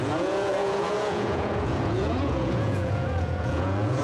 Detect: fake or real fake